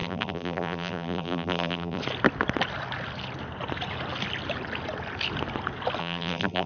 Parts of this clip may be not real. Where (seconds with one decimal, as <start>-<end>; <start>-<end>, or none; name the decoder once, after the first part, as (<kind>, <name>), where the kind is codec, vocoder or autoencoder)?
0.0-2.0 (vocoder, BigVGAN v2); 6.0-6.7